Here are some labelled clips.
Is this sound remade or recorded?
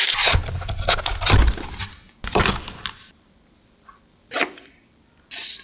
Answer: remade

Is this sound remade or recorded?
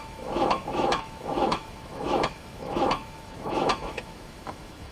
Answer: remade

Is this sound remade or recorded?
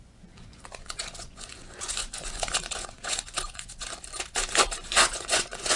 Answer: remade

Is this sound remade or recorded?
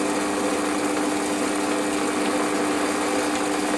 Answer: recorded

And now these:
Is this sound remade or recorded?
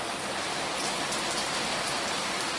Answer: recorded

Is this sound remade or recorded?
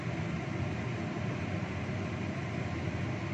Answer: recorded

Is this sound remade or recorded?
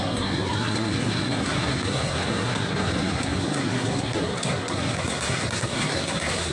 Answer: remade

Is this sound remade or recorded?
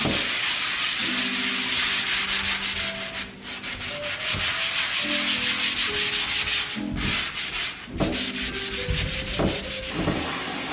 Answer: recorded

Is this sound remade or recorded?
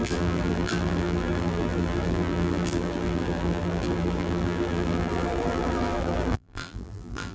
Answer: remade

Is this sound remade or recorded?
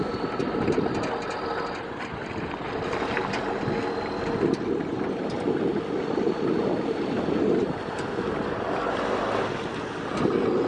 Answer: recorded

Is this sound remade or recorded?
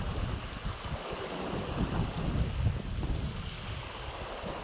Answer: recorded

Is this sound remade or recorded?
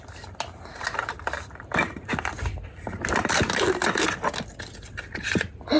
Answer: recorded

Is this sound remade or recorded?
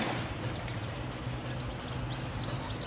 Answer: recorded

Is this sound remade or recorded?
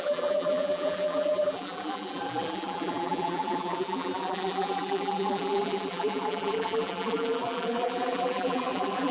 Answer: remade